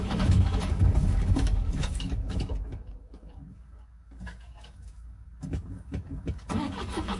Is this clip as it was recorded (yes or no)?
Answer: no